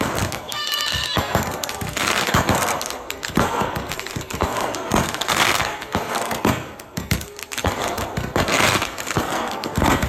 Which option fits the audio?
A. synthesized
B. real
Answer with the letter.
A